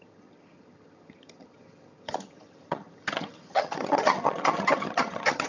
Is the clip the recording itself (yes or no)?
no